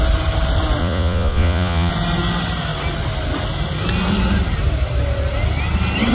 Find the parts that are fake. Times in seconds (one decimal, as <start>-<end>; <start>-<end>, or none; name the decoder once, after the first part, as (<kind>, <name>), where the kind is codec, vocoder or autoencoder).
0.8-1.9 (vocoder, Vocos)